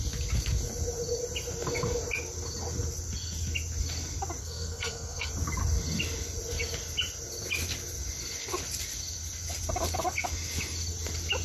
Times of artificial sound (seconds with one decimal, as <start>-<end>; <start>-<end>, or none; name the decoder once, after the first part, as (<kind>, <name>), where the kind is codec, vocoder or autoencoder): 4.4-5.3 (codec, SNAC)